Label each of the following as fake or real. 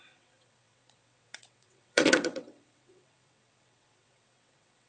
fake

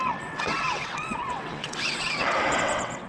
fake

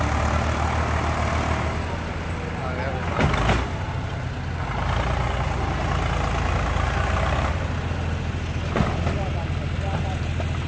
real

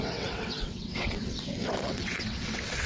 fake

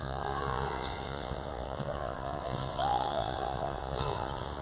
fake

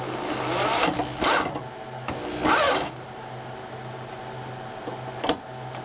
real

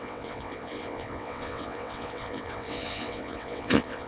fake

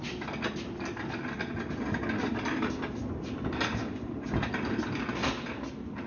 real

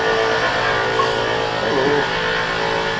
real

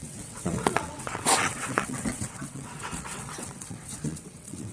fake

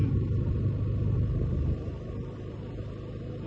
real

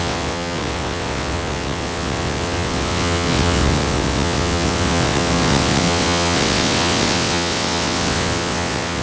fake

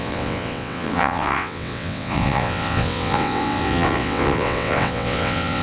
fake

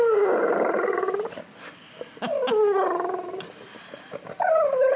real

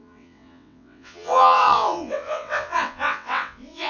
fake